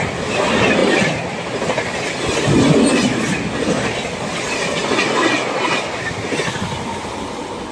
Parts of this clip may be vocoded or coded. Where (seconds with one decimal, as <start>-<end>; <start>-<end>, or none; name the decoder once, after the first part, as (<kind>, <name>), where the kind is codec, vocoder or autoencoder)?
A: none